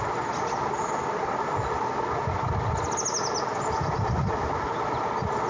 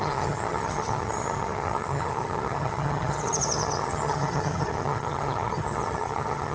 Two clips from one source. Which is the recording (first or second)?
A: first